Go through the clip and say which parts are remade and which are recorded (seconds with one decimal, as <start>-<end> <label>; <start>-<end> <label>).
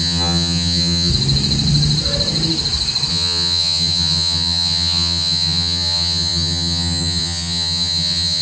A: 0.0-1.1 remade; 1.1-3.1 recorded; 3.1-8.4 remade